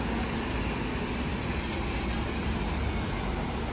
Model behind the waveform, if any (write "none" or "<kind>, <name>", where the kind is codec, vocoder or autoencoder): none